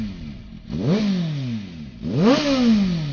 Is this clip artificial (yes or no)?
no